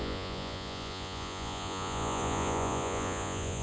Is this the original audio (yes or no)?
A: no